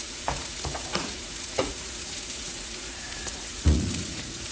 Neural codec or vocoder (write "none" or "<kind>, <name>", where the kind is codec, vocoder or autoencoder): vocoder, Vocos